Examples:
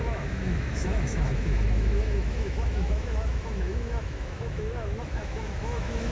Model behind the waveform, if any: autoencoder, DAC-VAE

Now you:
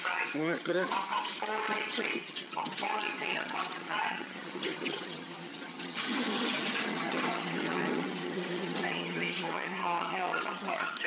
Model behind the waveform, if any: vocoder, HiFi-GAN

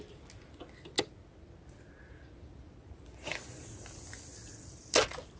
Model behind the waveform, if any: none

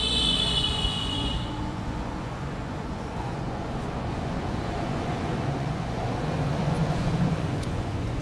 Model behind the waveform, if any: vocoder, Vocos